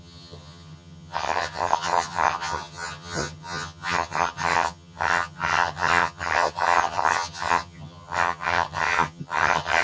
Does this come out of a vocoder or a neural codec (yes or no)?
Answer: yes